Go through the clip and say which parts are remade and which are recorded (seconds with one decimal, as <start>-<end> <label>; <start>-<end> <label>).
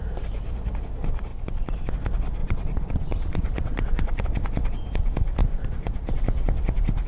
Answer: 0.0-1.3 recorded; 1.3-1.9 remade; 1.9-2.4 recorded; 2.4-4.2 remade; 4.2-5.4 recorded; 5.4-6.2 remade; 6.2-7.1 recorded